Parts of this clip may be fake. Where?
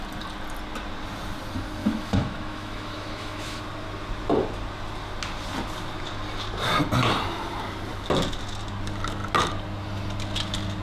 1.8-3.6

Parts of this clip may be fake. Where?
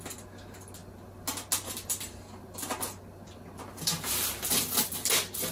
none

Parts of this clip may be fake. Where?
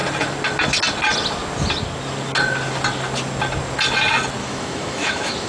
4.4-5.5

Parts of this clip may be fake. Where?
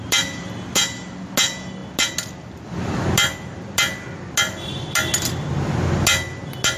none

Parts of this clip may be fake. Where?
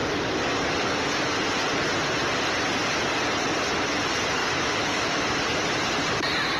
4.4-5.2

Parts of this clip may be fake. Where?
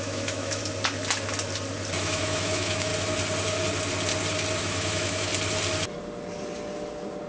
0.0-0.6; 2.0-2.9; 4.6-5.3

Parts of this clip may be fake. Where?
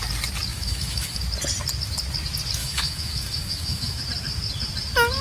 0.5-1.2; 2.6-4.0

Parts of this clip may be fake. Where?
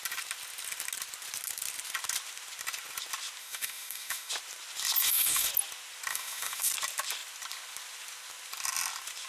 3.4-4.3; 5.0-5.5; 6.1-6.7